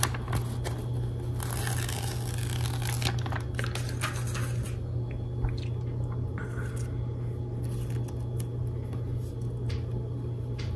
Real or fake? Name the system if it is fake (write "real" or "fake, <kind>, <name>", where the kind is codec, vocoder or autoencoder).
real